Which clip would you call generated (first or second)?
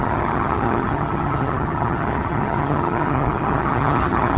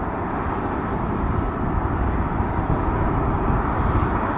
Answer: first